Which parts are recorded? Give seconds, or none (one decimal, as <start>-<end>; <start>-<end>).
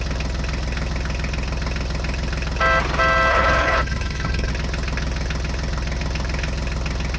0.0-3.3; 4.5-7.2